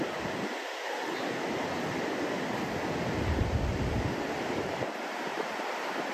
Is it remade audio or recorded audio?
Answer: recorded